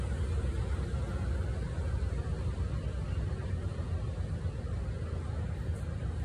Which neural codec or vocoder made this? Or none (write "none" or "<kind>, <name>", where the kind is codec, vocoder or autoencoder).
none